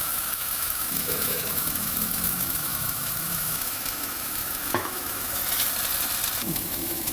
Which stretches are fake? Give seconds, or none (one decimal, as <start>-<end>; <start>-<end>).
0.0-5.4; 6.4-7.1

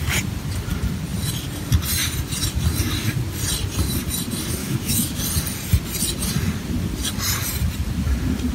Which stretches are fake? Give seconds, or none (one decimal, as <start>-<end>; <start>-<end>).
4.6-5.2